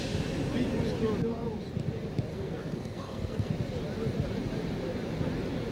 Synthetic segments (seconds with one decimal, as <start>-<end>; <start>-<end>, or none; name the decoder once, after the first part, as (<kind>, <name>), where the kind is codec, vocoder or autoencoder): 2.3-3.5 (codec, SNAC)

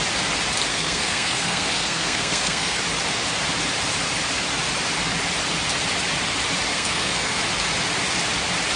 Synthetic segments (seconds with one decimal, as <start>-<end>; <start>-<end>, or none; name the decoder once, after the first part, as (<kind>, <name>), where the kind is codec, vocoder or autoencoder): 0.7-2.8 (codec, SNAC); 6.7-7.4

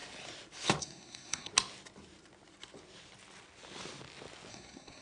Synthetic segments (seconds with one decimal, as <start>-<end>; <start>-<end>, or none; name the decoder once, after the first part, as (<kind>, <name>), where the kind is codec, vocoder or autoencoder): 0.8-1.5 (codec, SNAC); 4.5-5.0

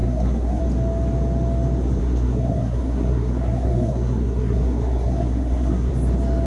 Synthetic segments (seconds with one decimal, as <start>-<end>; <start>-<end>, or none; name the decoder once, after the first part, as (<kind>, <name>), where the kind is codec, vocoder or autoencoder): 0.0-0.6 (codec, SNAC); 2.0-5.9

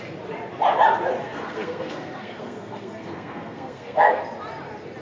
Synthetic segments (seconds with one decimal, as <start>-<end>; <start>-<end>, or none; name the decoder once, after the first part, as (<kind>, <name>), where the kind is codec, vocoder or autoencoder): 1.2-4.2 (codec, SNAC)